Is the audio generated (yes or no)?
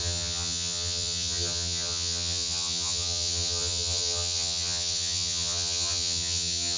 yes